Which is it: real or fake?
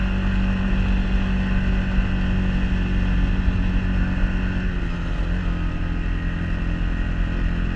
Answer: real